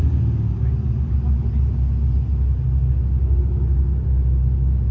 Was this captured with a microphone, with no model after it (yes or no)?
yes